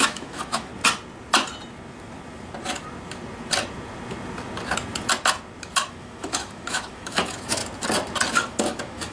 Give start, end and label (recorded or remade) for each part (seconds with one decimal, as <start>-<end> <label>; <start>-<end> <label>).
0.0-0.7 remade; 0.7-5.9 recorded; 5.9-7.6 remade; 7.6-8.3 recorded; 8.3-9.1 remade